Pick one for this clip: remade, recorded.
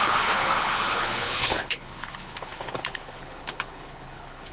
remade